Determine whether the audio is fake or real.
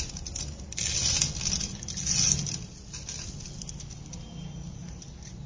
real